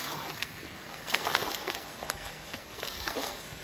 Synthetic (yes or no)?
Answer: yes